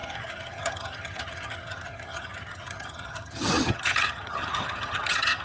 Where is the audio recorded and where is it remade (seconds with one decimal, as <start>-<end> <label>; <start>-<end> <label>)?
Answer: 0.0-5.4 remade